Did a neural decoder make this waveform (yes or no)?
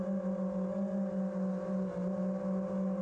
no